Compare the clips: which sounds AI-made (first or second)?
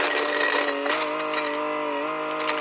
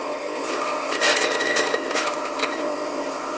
second